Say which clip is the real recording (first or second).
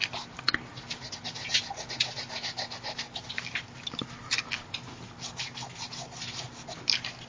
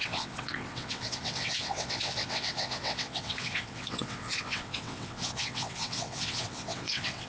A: first